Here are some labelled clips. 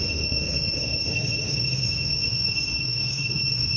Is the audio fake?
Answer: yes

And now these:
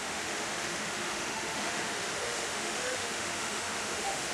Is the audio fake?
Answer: yes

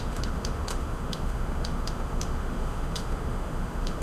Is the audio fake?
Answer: yes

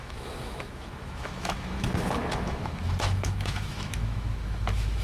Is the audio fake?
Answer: yes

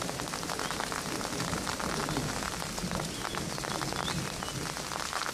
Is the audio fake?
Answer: no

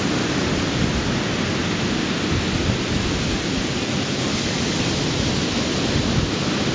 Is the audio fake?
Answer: no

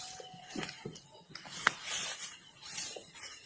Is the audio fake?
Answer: no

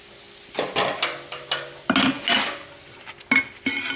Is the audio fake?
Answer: no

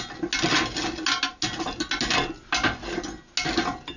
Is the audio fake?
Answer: no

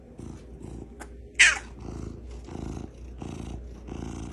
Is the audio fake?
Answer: no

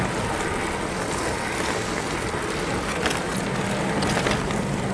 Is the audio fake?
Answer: no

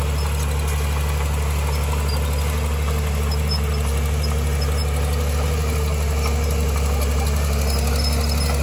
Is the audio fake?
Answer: no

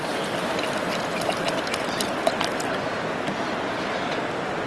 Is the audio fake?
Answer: no